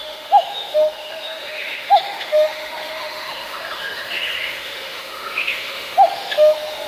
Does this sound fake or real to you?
fake